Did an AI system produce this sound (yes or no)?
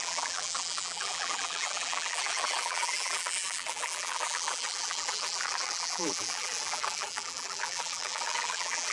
yes